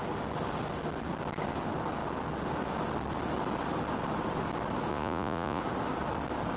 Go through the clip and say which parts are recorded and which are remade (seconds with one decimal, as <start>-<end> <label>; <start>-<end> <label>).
0.0-4.9 recorded; 4.9-5.6 remade; 5.6-6.6 recorded